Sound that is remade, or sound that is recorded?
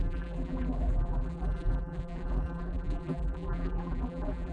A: remade